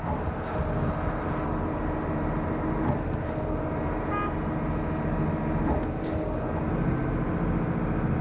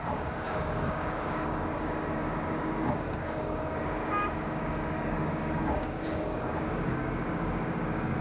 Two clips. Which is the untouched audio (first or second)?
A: first